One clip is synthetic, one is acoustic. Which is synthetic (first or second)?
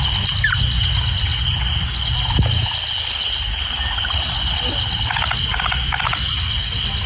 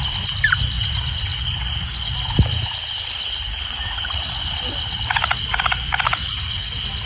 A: second